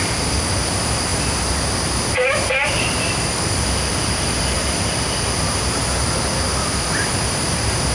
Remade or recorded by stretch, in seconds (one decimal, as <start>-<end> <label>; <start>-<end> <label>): 0.0-1.1 remade; 1.1-2.1 recorded; 2.1-5.8 remade; 5.8-7.0 recorded; 7.0-7.9 remade